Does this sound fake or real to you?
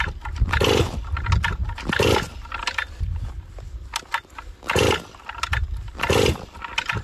real